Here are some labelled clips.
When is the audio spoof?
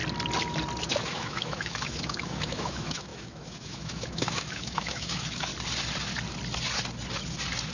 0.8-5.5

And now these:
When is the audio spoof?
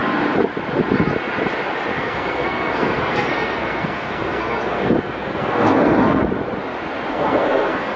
1.9-6.3; 7.1-8.0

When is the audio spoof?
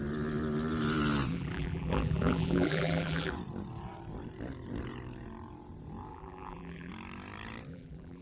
1.3-3.3; 6.1-6.9; 7.7-8.2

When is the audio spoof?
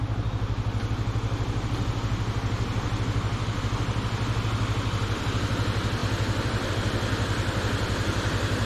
6.0-6.7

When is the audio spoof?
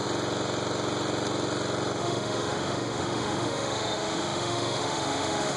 2.0-5.6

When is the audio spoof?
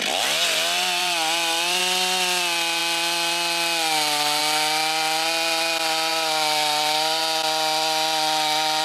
1.0-1.8; 6.1-7.2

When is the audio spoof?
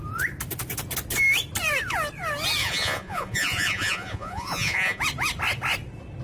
2.6-5.0